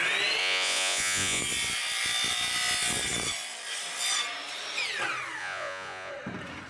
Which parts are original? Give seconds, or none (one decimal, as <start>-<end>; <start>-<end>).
0.0-0.4; 1.4-5.4; 6.1-6.7